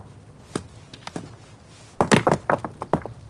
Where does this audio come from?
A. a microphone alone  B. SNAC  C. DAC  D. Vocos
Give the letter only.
A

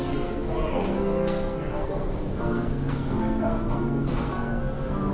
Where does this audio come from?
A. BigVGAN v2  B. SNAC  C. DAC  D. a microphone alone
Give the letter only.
B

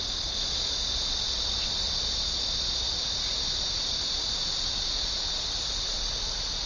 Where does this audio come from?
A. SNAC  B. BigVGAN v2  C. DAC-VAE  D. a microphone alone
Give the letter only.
D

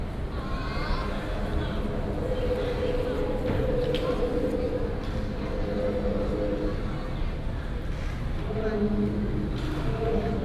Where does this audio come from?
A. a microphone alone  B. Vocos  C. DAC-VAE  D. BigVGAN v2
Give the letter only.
A